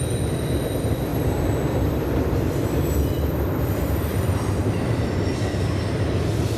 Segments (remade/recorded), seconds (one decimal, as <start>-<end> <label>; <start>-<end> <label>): 0.0-6.6 remade